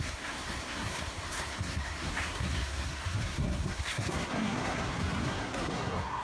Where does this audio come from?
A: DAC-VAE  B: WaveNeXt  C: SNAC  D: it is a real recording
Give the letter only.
C